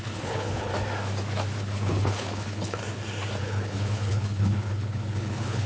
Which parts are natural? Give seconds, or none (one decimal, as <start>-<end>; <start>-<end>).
0.7-1.6; 2.8-3.4